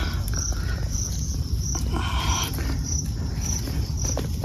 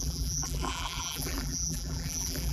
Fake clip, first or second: second